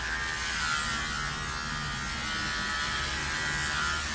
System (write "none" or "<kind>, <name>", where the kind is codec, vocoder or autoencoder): none